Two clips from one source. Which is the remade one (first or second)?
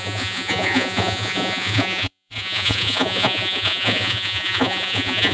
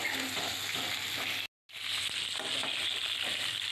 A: first